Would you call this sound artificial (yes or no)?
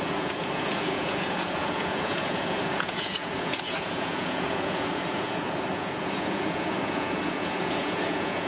yes